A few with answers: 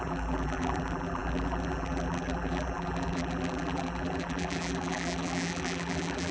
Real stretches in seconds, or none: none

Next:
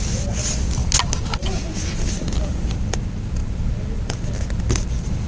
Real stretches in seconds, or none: 0.0-5.3

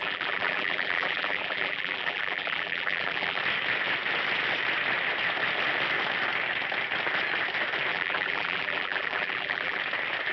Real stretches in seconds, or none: 3.4-7.9; 9.8-10.3

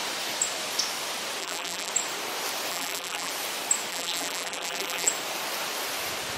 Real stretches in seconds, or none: 0.0-1.4; 1.9-2.7; 3.3-3.9; 5.1-6.4

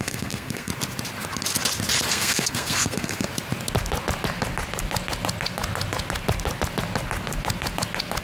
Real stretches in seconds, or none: 0.7-2.1; 3.3-8.2

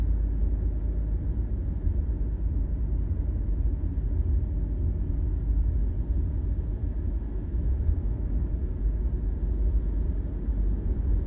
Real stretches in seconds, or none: 0.0-6.8; 8.5-11.3

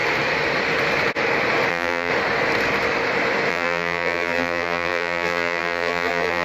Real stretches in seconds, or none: 0.0-1.7; 2.1-3.5

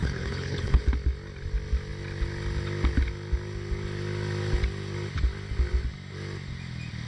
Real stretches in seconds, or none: 0.8-7.1